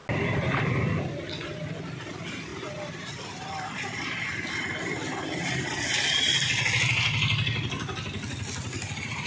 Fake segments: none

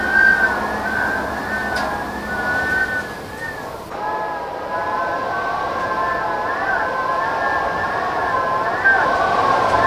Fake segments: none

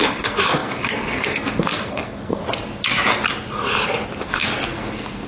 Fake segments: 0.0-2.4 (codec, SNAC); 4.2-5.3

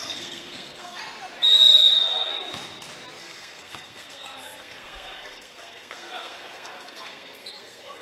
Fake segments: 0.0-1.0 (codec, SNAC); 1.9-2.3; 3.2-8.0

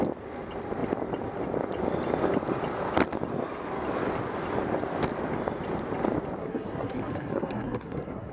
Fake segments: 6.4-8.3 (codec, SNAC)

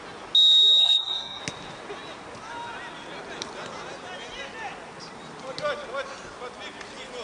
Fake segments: 0.8-1.4 (codec, SNAC)